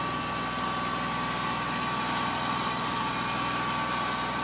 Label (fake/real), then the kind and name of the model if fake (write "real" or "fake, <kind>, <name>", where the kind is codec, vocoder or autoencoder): real